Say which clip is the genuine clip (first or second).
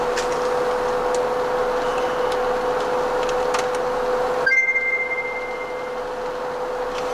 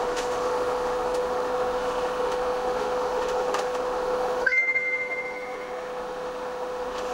first